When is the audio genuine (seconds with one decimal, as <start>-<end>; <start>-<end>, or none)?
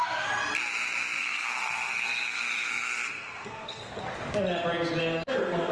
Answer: 0.0-1.2; 4.0-5.0